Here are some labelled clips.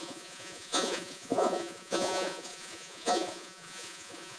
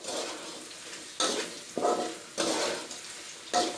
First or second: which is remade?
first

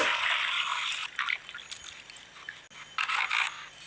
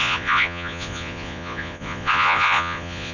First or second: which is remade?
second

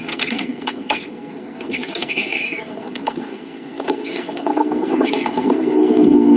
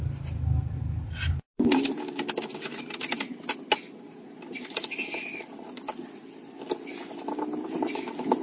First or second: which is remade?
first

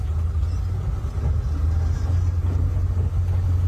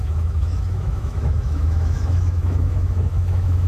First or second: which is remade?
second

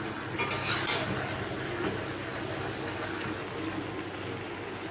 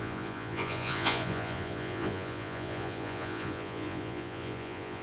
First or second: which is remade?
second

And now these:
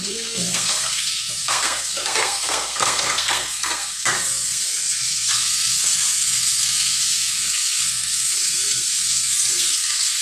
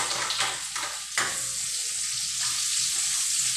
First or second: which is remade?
first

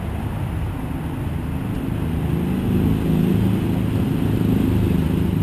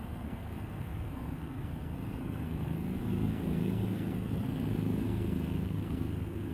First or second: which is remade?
second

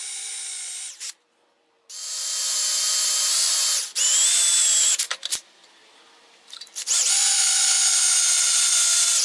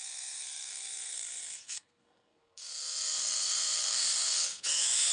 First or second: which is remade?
second